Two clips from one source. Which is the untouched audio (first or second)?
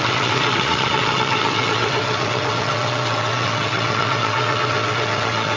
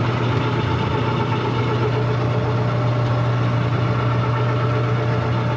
second